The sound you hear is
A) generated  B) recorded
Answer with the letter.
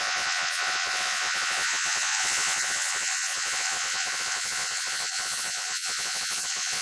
A